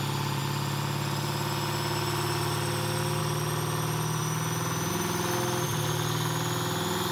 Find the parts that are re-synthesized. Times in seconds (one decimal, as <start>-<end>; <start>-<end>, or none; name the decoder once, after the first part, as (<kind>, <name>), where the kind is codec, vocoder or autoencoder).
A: none